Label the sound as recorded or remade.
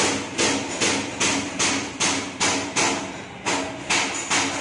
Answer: recorded